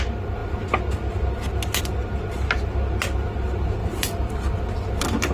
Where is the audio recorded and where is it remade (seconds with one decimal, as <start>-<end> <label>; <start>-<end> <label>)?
0.0-3.8 recorded; 3.8-4.7 remade; 4.7-5.3 recorded